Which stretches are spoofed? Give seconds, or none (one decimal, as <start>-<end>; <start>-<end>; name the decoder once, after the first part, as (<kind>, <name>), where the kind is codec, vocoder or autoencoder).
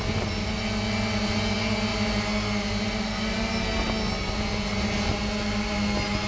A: none